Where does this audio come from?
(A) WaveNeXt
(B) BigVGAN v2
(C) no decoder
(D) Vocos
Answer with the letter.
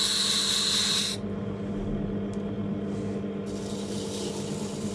C